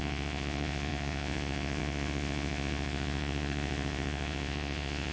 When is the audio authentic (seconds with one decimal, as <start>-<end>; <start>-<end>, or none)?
none